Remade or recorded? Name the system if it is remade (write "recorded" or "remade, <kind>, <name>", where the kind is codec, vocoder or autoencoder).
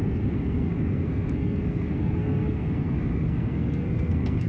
remade, codec, SNAC